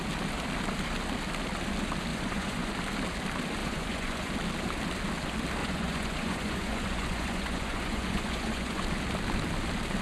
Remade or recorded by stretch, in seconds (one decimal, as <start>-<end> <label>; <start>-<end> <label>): 0.0-2.1 recorded; 2.1-2.7 remade; 2.7-3.6 recorded; 3.6-4.3 remade; 4.3-5.6 recorded; 5.6-8.8 remade; 8.8-10.0 recorded

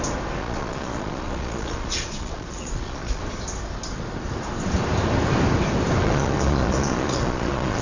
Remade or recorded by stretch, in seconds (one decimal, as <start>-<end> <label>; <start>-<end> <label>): 0.0-0.4 recorded; 0.4-3.2 remade; 3.2-6.0 recorded; 6.0-7.8 remade

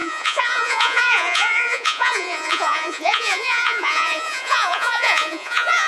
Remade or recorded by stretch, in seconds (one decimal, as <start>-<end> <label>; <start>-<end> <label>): 0.0-5.9 remade

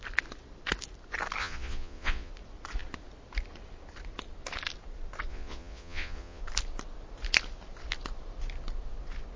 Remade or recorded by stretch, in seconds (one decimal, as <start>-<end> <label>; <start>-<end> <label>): 0.0-1.4 recorded; 1.4-2.3 remade; 2.3-5.3 recorded; 5.3-6.4 remade; 6.4-9.4 recorded

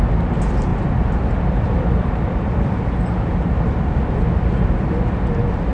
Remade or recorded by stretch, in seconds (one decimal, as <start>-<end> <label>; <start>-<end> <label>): 0.0-5.7 recorded